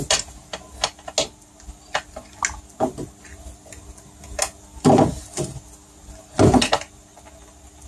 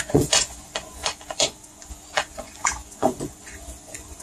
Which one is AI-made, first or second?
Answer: second